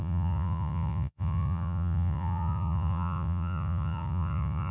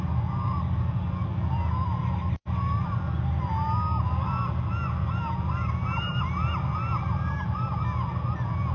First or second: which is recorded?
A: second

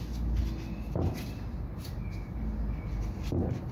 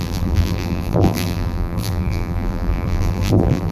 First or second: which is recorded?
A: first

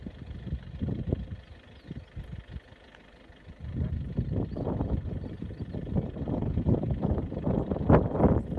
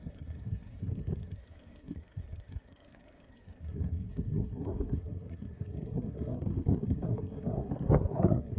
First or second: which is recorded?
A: first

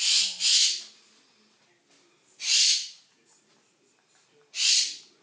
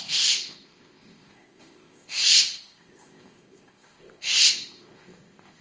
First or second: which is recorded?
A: first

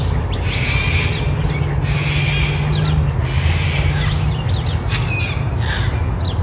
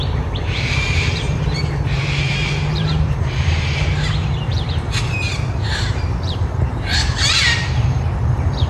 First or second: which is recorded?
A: first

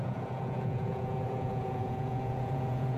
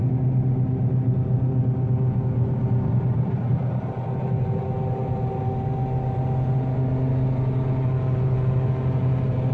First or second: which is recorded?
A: second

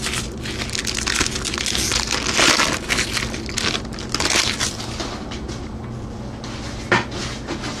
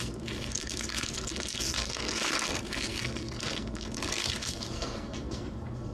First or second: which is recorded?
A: first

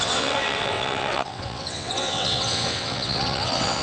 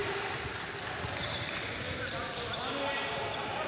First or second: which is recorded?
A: second